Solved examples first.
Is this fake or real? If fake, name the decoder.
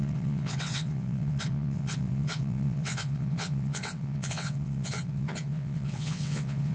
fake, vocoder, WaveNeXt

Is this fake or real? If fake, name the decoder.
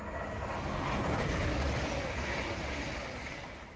real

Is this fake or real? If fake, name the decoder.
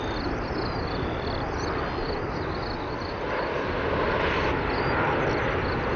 real